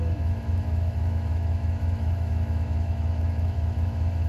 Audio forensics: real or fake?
fake